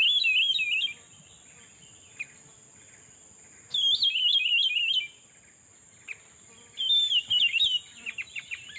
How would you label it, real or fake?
real